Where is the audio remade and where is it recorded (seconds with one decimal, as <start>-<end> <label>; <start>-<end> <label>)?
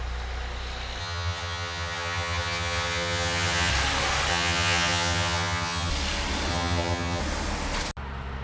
0.0-1.0 recorded; 1.0-3.7 remade; 3.7-4.3 recorded; 4.3-5.9 remade; 5.9-6.5 recorded; 6.5-7.2 remade; 7.2-8.4 recorded